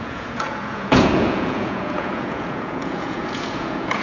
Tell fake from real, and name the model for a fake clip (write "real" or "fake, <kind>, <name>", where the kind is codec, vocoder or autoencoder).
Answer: fake, vocoder, Vocos